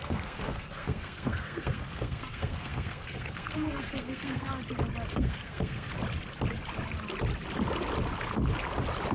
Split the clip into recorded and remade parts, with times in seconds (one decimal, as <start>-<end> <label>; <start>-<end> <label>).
0.0-4.5 remade; 4.5-5.1 recorded; 5.1-5.9 remade; 5.9-9.1 recorded